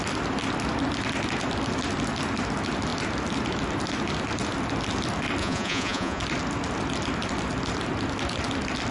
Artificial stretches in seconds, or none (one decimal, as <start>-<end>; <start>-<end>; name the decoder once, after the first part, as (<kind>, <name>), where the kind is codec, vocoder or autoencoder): 5.4-6.2 (vocoder, Vocos)